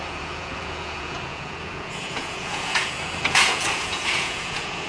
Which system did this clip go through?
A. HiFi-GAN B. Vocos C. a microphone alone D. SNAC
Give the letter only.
B